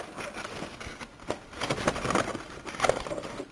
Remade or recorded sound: recorded